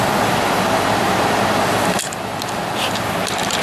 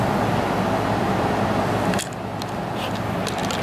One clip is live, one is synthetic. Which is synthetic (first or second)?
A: first